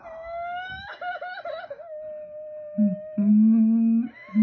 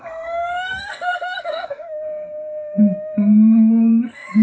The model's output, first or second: second